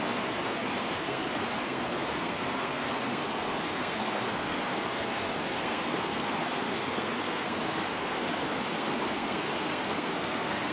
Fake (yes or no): yes